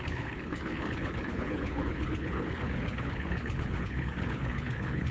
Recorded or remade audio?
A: remade